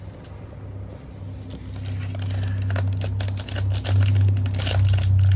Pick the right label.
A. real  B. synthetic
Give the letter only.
A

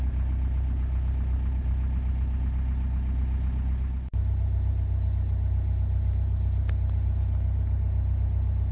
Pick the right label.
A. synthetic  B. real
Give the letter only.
B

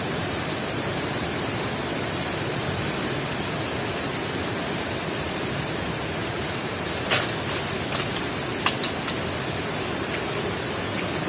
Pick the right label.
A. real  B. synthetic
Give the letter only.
A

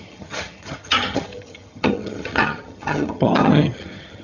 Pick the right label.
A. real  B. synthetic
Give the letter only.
B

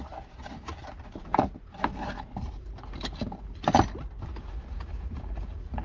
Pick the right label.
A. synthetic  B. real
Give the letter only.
B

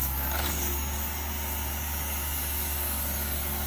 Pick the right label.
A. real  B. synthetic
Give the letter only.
B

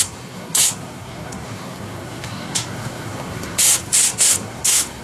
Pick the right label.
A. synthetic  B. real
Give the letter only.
A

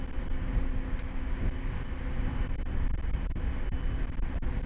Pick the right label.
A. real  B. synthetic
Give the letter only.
A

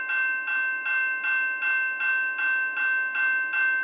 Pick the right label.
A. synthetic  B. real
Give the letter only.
B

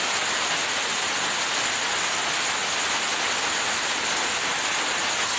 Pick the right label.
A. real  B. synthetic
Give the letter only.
A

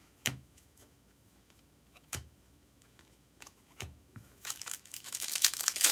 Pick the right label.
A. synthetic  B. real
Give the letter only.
A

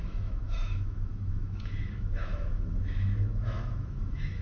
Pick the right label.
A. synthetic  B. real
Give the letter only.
A